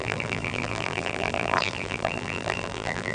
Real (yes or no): no